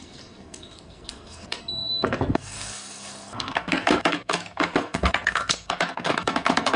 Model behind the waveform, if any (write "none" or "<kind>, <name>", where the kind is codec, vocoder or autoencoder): codec, SNAC